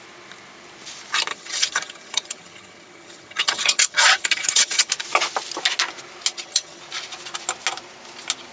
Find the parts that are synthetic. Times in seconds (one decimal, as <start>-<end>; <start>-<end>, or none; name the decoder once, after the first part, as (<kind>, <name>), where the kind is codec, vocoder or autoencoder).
1.3-4.9 (vocoder, HiFi-GAN); 6.3-6.8

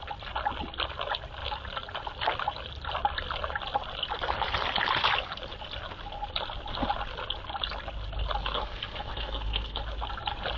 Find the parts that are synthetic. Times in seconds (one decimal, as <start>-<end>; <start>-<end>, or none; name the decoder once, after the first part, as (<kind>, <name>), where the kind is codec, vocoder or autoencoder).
8.4-9.8 (codec, SNAC)

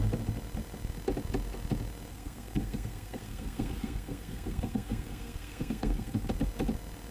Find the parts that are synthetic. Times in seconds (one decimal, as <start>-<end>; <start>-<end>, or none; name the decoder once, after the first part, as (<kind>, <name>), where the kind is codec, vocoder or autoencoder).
2.1-6.3 (codec, SNAC)

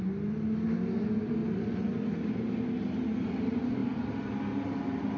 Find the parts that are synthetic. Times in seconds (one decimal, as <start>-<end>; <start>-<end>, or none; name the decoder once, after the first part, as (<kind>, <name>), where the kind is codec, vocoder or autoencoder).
none

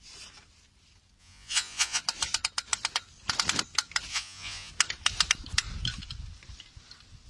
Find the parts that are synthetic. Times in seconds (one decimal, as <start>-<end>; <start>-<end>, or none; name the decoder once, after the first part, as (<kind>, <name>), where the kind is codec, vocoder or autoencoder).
1.2-2.0 (vocoder, Vocos); 4.1-4.7